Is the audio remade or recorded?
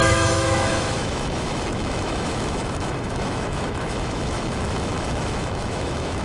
remade